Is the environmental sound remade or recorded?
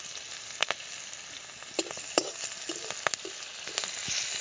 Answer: recorded